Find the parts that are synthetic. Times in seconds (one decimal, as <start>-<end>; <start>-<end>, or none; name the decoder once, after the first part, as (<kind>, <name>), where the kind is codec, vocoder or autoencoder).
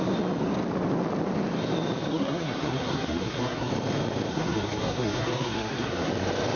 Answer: 2.1-3.7 (codec, SNAC); 4.3-6.1